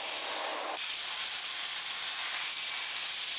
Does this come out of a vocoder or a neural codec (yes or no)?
no